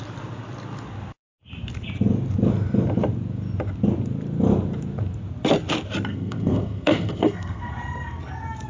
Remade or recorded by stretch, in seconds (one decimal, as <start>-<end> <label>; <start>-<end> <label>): 0.0-6.1 recorded; 6.1-7.7 remade; 7.7-8.7 recorded